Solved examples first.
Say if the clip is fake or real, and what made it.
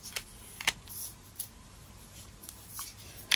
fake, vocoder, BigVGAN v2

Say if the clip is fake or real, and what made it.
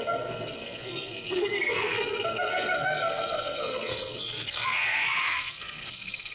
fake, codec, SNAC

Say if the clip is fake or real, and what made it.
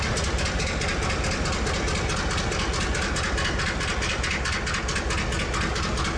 real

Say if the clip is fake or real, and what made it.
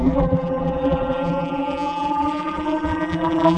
fake, vocoder, BigVGAN v2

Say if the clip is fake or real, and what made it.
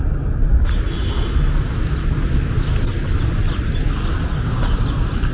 real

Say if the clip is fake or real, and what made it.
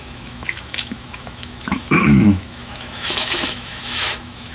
fake, autoencoder, DAC-VAE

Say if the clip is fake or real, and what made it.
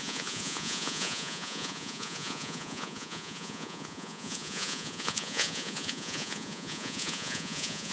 fake, vocoder, Vocos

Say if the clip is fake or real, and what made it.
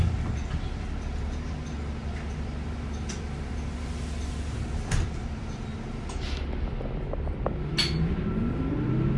real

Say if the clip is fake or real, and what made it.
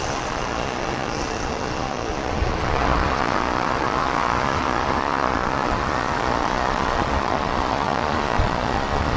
fake, vocoder, Vocos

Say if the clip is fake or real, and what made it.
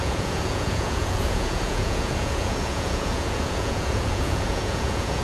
fake, vocoder, Vocos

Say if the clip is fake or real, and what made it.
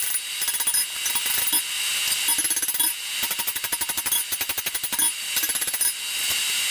real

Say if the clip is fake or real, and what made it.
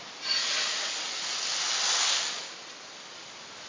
real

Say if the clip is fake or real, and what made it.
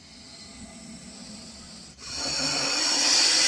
real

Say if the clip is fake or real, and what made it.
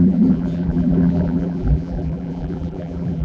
fake, vocoder, BigVGAN v2